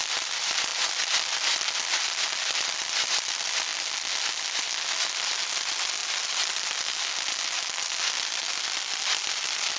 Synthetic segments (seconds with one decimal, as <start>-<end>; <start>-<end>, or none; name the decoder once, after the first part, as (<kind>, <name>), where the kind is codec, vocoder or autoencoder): none